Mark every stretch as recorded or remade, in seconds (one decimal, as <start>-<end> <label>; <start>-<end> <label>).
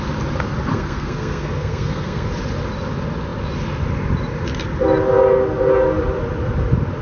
0.0-0.7 recorded; 0.7-2.3 remade; 2.3-7.0 recorded